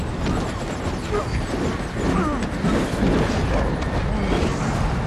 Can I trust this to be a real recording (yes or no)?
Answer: yes